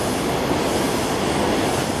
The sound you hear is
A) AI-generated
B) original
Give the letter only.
B